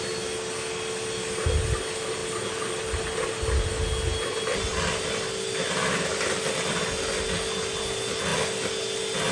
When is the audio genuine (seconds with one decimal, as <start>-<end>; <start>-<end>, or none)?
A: 0.0-9.3